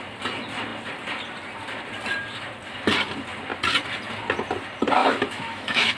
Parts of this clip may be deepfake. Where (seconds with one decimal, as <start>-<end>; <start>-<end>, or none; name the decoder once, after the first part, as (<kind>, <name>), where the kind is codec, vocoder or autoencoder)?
5.0-6.0 (autoencoder, DAC-VAE)